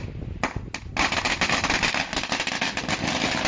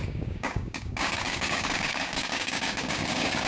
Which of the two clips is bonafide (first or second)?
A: first